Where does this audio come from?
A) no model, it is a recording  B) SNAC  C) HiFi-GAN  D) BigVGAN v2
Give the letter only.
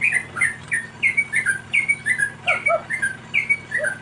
A